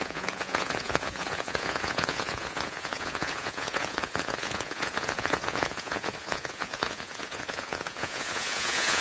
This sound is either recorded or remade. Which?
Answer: remade